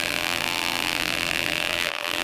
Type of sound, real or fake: fake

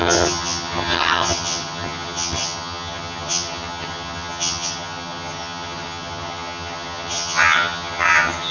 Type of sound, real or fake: fake